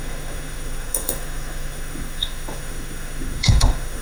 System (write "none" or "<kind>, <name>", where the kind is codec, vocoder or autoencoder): autoencoder, DAC-VAE